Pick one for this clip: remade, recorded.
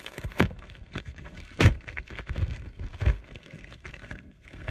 remade